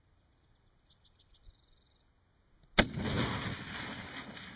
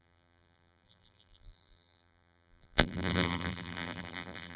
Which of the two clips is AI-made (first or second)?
second